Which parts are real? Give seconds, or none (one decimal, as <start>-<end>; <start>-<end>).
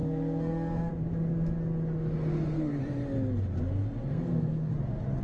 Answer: 0.9-2.3; 2.8-4.1; 4.7-5.2